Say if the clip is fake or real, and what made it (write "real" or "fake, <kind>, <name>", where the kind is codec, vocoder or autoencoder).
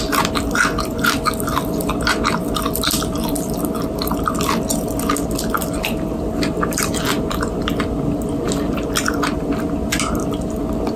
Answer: real